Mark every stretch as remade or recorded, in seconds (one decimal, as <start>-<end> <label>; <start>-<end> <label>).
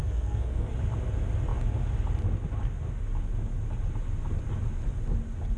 0.0-0.7 remade; 0.7-5.6 recorded